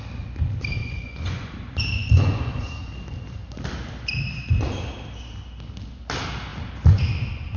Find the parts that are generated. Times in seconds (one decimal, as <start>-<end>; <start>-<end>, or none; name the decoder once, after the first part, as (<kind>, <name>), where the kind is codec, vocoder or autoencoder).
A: 0.8-1.5 (vocoder, Vocos); 2.0-2.8